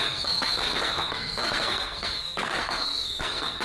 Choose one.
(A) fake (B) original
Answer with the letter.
A